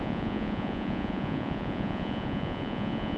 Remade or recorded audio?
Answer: remade